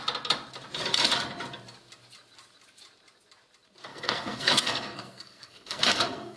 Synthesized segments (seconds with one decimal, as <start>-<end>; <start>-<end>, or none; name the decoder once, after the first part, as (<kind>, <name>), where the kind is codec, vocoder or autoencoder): 3.9-6.4 (codec, SNAC)